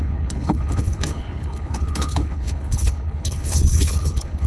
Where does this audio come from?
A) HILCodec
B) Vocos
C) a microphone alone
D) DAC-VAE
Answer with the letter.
A